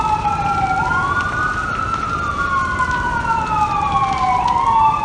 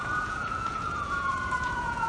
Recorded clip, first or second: first